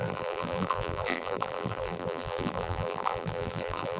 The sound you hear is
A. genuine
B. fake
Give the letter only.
B